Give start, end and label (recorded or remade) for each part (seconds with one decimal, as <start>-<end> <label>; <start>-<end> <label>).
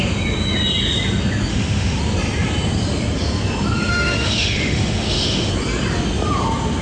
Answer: 0.0-1.5 recorded; 1.5-2.0 remade; 2.0-3.9 recorded; 3.9-5.5 remade; 5.5-6.8 recorded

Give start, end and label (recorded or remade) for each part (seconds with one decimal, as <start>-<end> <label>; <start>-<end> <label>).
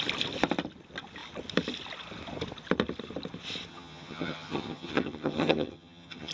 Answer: 0.0-3.7 recorded; 3.7-6.3 remade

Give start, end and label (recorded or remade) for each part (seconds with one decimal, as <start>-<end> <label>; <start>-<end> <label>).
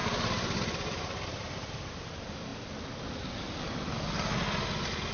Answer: 0.0-1.9 remade; 1.9-5.1 recorded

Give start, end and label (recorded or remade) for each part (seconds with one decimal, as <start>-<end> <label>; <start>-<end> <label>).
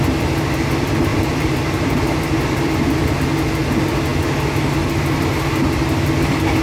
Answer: 0.0-1.1 recorded; 1.1-3.2 remade; 3.2-6.6 recorded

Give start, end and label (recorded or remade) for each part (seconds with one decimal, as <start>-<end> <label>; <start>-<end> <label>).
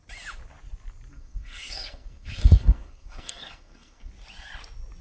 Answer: 0.0-1.1 recorded; 1.1-4.1 remade; 4.1-5.0 recorded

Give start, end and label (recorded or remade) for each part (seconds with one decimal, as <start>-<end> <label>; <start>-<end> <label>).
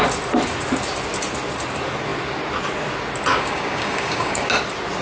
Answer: 0.0-3.3 recorded; 3.3-4.5 remade; 4.5-5.0 recorded